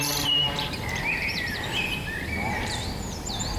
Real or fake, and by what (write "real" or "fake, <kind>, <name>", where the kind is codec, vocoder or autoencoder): fake, vocoder, BigVGAN v2